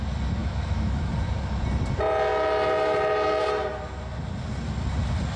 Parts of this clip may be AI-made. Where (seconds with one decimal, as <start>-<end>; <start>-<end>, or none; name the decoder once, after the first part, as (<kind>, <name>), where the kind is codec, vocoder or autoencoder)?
0.4-1.1 (autoencoder, DAC-VAE)